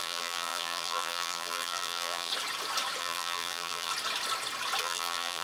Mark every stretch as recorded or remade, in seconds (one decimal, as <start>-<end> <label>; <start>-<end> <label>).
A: 0.0-2.3 remade; 2.3-3.0 recorded; 3.0-3.9 remade; 3.9-4.8 recorded; 4.8-5.4 remade